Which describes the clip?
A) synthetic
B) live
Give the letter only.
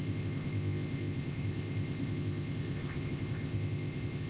A